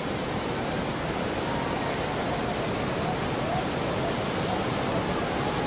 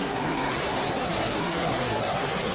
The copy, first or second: second